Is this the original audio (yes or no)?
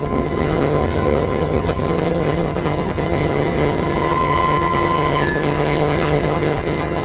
no